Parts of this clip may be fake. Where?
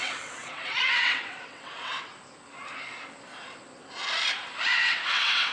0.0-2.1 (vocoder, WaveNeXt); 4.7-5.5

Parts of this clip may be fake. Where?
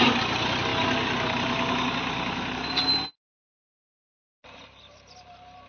none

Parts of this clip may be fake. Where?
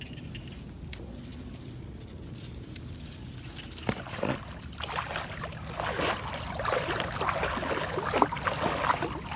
none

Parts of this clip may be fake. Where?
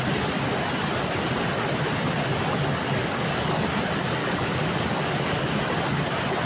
2.8-3.6 (codec, DAC); 4.2-5.5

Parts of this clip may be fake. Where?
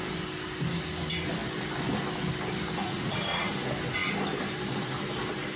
2.8-3.5 (vocoder, Vocos)